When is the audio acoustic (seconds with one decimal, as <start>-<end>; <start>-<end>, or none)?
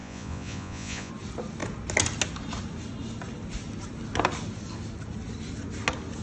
1.1-6.2